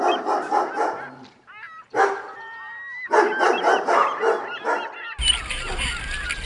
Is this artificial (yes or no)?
no